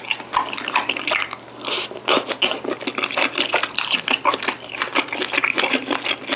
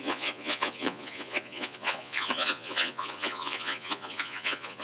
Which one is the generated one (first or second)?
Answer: second